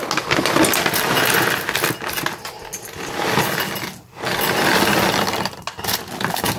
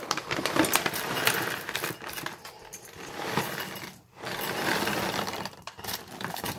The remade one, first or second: second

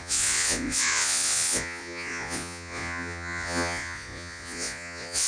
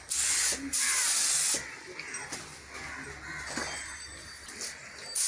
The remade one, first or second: first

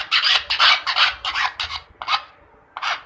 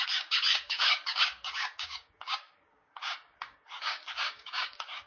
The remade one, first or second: second